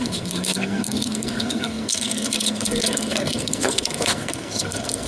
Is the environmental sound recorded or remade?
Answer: remade